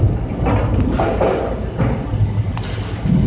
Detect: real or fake real